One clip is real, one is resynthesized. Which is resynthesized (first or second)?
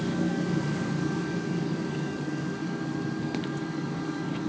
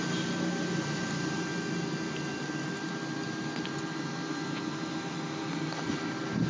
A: first